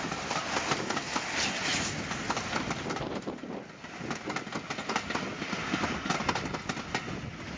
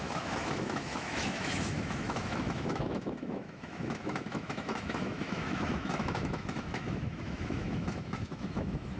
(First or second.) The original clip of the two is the first